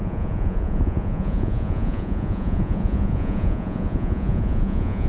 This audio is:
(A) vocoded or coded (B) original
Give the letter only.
A